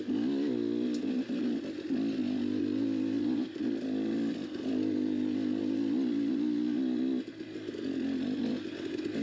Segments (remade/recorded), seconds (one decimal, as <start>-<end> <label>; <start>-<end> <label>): 0.0-9.2 recorded